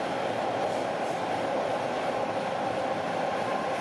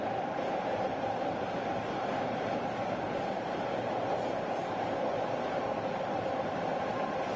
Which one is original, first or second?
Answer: first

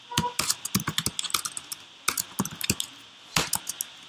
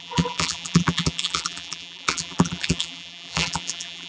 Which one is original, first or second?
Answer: first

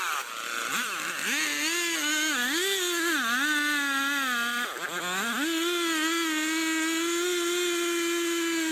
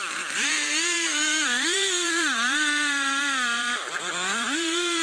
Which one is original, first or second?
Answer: first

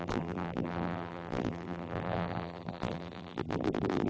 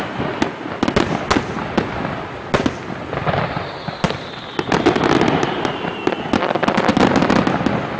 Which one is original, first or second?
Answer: second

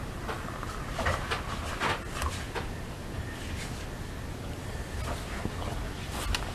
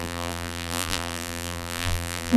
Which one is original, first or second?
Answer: first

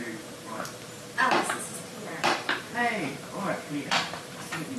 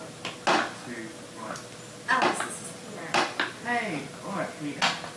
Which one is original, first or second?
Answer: second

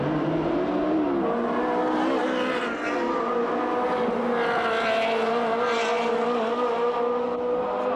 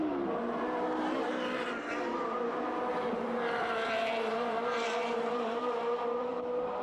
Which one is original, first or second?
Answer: first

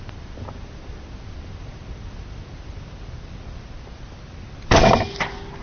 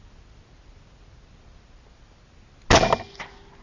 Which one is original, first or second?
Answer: second